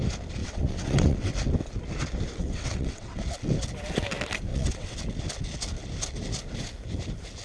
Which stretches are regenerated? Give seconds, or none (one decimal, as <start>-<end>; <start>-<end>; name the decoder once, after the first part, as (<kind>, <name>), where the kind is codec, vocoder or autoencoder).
0.4-1.3 (vocoder, WaveNeXt); 2.4-3.2; 4.5-5.0